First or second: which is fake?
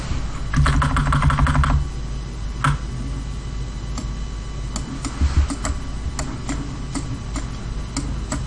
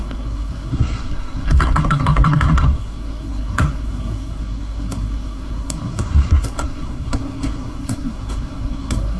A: second